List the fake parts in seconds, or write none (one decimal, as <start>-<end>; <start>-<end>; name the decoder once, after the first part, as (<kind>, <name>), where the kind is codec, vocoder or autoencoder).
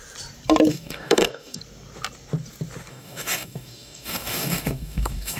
0.7-1.6 (codec, DAC); 2.9-5.4